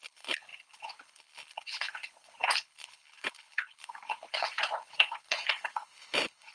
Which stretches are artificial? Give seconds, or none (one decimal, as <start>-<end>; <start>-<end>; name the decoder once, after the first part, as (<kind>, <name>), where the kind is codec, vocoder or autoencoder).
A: 0.0-6.5 (codec, HILCodec)